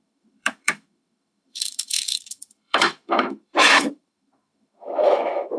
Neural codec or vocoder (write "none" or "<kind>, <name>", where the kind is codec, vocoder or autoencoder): autoencoder, DAC-VAE